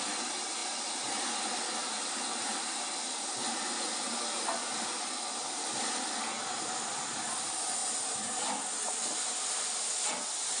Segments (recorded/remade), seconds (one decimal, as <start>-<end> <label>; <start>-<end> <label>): 0.0-10.6 recorded